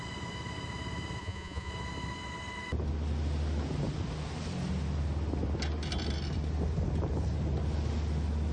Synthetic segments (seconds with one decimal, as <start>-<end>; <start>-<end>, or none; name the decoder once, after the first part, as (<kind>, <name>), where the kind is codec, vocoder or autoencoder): 1.2-1.7 (vocoder, Vocos)